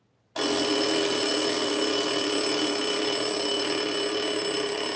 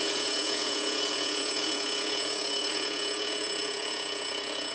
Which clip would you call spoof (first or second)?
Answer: second